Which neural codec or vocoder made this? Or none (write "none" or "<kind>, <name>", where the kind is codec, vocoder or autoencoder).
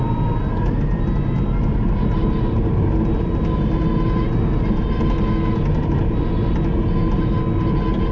none